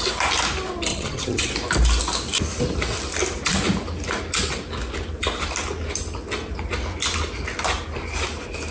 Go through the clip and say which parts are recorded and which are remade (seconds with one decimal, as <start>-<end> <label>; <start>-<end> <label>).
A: 0.0-0.9 recorded; 0.9-1.5 remade; 1.5-8.7 recorded

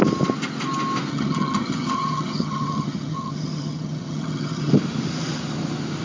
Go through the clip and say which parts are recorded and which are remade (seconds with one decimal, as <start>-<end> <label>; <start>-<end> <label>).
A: 0.0-1.1 recorded; 1.1-4.7 remade; 4.7-6.0 recorded

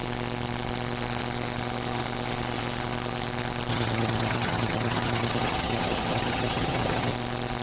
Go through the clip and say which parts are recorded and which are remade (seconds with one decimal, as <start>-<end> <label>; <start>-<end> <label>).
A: 0.0-3.7 recorded; 3.7-7.1 remade; 7.1-7.6 recorded

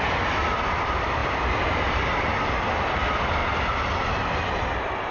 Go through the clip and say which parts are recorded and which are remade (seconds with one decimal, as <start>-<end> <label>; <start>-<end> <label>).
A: 0.0-5.1 recorded